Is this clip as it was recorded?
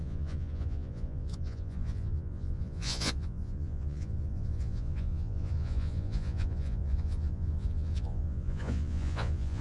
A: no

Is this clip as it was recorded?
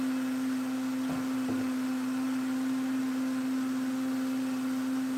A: yes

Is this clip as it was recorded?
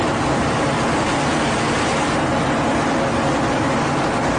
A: yes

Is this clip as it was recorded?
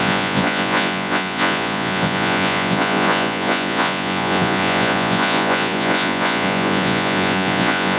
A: no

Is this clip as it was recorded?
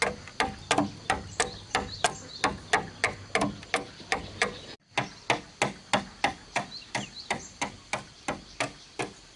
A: yes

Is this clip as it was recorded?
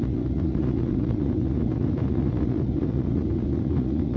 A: no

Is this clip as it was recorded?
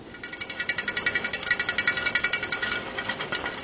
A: yes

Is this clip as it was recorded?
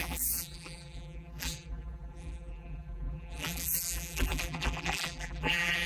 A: no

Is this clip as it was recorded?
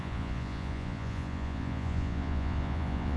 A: no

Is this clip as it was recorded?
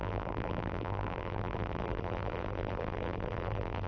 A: no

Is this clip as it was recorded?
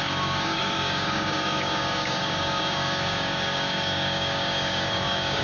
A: no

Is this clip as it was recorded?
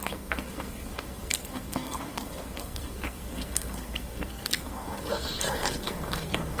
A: no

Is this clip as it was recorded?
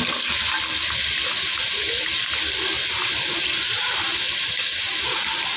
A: yes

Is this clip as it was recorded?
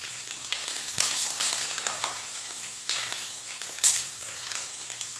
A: no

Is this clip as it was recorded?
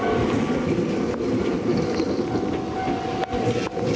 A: yes